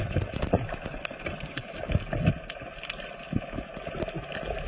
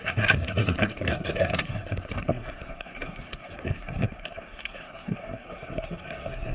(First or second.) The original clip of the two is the first